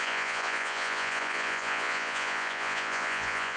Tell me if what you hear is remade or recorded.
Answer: remade